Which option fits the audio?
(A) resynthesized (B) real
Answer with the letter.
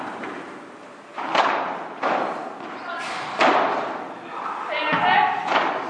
B